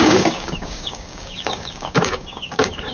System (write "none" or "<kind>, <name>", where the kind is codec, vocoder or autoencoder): codec, DAC